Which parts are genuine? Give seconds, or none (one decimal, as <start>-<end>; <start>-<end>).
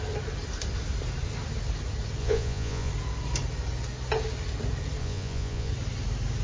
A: 0.0-2.2; 2.9-5.0; 5.7-6.4